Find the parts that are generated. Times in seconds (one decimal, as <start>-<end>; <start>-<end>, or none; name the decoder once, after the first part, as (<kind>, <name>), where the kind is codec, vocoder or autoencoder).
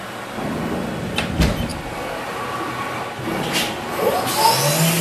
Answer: none